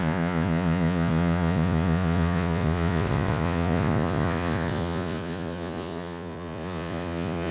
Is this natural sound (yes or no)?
no